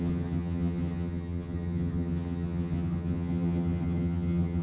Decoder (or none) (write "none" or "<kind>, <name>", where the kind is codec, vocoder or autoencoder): vocoder, HiFi-GAN